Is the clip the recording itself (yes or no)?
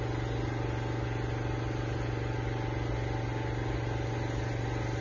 yes